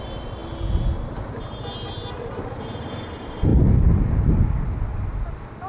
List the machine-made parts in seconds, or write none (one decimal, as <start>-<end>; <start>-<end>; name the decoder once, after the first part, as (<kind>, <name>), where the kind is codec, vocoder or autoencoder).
none